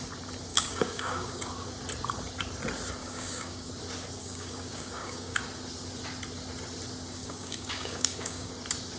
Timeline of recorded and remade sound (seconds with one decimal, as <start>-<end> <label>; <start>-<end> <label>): 0.0-0.5 recorded; 0.5-1.5 remade; 1.5-3.0 recorded; 3.0-3.7 remade; 3.7-4.2 recorded; 4.2-5.4 remade; 5.4-7.2 recorded; 7.2-8.5 remade; 8.5-9.0 recorded